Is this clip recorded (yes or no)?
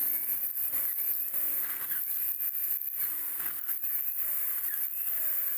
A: yes